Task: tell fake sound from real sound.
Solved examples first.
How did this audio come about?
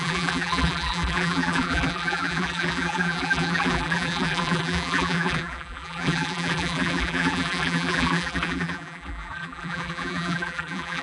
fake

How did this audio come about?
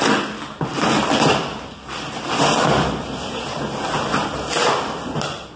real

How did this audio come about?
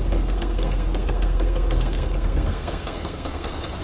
fake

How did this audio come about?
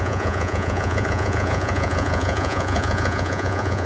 fake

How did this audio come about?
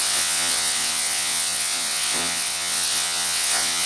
fake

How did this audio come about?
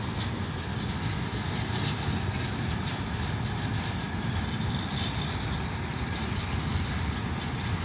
real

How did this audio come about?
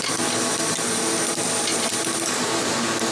real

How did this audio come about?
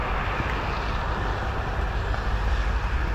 real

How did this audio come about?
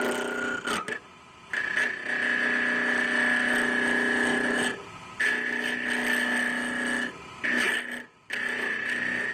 real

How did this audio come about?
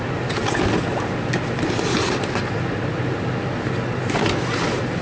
real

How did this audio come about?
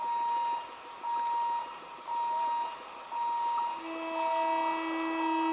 real